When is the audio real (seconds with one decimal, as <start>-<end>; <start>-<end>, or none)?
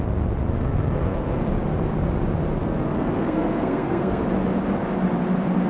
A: 0.0-0.6; 1.5-2.6; 4.2-5.7